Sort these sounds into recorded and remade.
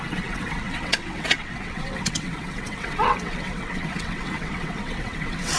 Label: remade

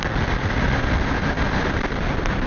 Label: recorded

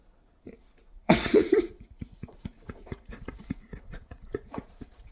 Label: remade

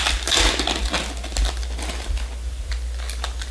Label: recorded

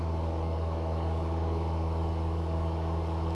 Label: remade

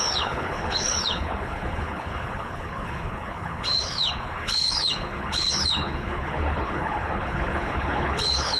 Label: remade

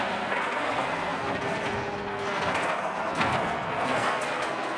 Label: remade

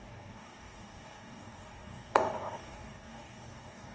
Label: remade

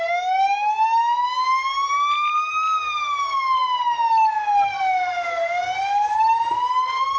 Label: recorded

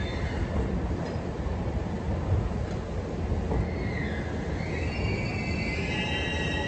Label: recorded